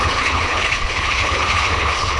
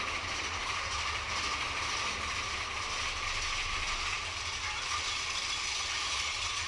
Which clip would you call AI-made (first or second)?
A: first